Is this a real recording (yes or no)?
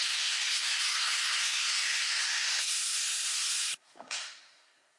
no